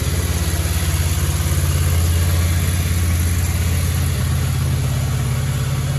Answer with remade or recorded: recorded